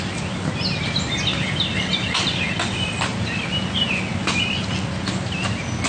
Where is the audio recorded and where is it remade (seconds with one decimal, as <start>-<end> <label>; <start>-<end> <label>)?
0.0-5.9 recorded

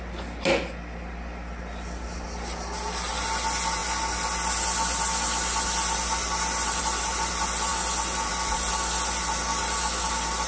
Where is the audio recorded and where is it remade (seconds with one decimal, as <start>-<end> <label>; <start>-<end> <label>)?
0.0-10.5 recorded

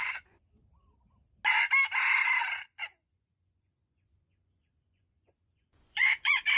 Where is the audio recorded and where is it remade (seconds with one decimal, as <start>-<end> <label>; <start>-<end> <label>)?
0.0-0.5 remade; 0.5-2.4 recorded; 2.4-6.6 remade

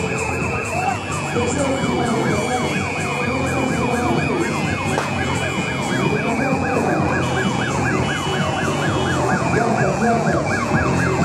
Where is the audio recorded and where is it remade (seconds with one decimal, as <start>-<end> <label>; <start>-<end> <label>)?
0.0-11.2 remade